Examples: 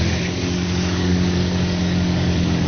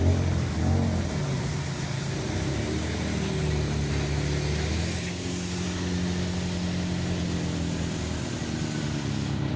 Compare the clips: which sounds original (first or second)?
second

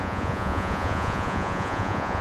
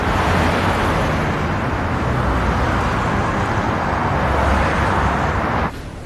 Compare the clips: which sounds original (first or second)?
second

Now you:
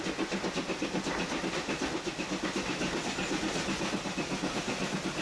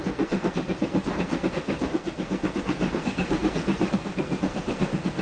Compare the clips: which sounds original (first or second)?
first